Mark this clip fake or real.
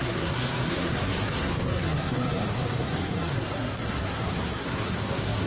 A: fake